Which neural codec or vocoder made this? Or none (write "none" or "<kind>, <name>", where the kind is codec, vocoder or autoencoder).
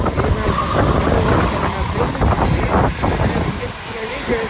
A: none